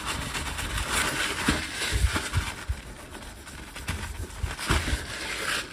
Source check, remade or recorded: recorded